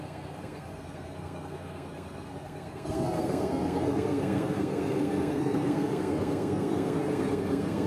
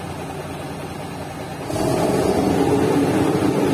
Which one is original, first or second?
second